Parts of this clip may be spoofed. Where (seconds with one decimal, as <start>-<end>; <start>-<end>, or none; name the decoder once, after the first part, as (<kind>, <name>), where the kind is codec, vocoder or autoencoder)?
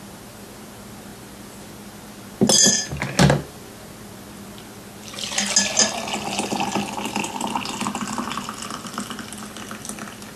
none